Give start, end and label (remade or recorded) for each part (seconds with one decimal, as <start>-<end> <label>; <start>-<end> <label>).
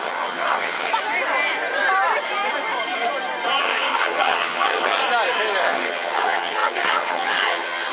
0.0-0.9 remade; 0.9-3.6 recorded; 3.6-5.0 remade; 5.0-5.6 recorded; 5.6-7.9 remade